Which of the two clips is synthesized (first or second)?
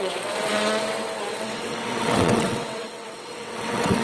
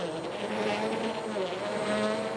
first